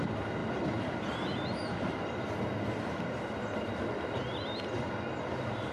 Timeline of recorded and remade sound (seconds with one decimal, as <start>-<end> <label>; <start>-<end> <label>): 0.0-0.4 recorded; 0.4-3.0 remade; 3.0-5.7 recorded